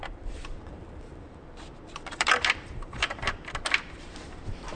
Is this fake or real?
fake